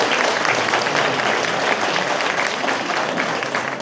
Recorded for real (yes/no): yes